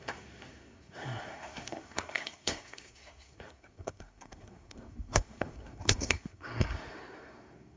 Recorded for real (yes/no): no